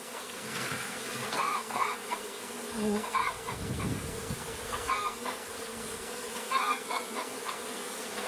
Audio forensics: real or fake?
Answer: fake